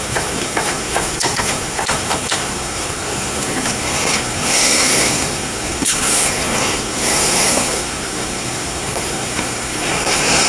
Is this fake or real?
fake